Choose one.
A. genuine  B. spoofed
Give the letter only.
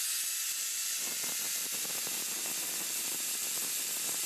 A